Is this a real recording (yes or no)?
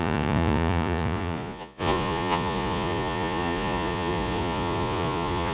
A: no